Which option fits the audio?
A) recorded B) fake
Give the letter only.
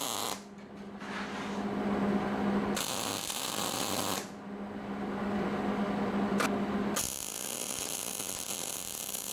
A